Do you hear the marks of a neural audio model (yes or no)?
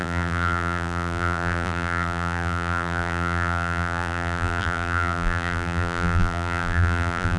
yes